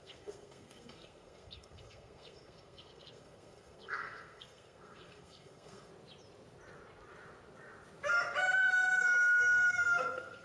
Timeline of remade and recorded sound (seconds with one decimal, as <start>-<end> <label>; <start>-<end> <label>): 0.0-5.9 remade; 5.9-8.4 recorded; 8.4-10.4 remade